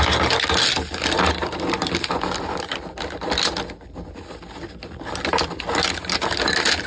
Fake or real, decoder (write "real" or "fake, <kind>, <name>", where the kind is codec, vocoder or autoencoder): real